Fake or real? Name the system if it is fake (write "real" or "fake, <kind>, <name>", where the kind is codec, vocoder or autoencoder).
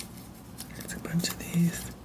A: real